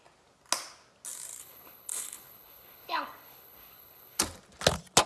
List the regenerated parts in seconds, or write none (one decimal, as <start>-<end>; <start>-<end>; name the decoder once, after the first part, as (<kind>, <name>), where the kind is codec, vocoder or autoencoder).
1.4-4.2 (codec, HILCodec)